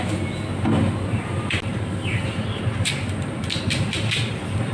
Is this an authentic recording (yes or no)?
yes